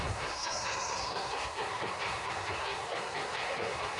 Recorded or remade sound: remade